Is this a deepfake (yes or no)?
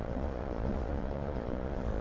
yes